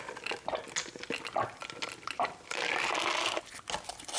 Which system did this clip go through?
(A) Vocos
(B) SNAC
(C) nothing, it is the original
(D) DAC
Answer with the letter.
C